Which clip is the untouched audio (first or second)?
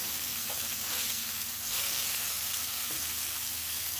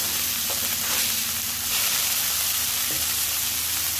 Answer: second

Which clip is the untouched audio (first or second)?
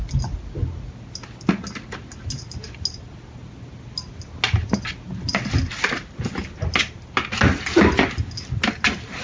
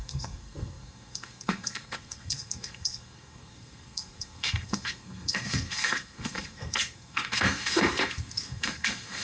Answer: first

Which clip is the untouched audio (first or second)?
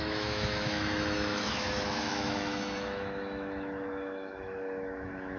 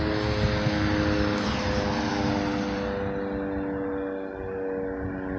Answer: second